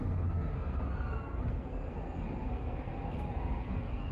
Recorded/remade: remade